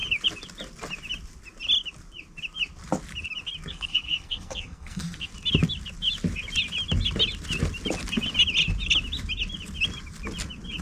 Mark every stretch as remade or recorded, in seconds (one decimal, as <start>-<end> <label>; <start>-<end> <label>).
0.0-3.7 recorded; 3.7-5.3 remade; 5.3-10.8 recorded